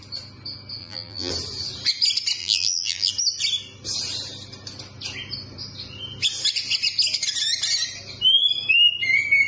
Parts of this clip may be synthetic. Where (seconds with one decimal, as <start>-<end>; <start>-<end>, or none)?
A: 0.8-1.3; 2.4-3.1